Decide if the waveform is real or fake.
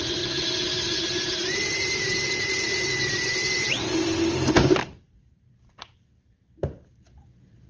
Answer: fake